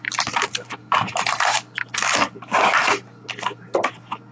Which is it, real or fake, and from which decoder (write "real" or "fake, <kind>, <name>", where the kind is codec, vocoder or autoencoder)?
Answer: real